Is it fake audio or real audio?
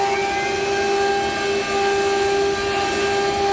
real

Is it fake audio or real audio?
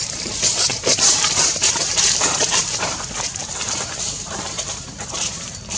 fake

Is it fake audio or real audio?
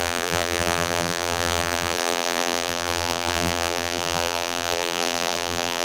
fake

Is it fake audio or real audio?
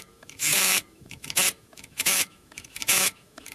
fake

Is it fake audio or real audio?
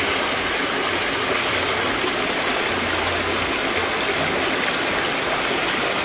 real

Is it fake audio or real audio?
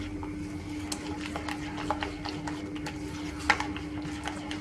real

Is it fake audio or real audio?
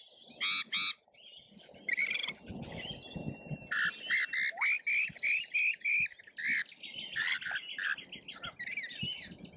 real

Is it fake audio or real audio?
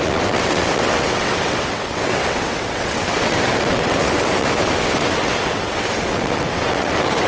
fake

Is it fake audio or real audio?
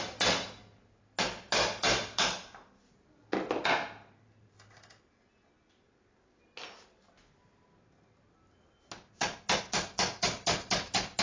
real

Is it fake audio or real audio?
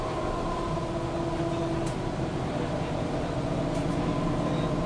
real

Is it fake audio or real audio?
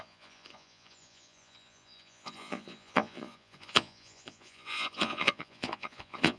fake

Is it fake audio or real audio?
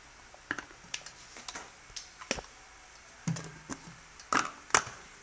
real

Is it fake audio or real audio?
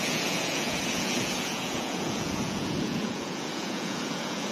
fake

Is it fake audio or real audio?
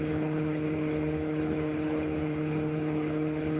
fake